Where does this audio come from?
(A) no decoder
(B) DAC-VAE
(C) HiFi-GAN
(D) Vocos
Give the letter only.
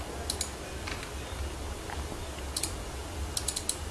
A